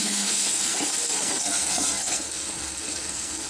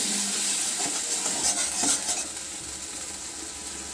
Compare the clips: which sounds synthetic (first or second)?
first